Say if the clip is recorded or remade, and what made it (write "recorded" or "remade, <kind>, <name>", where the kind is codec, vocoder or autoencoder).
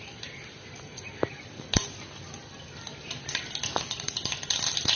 recorded